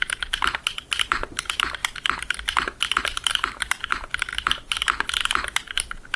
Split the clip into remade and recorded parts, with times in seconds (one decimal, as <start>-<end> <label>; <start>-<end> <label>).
0.0-1.8 remade; 1.8-3.0 recorded; 3.0-4.3 remade; 4.3-6.2 recorded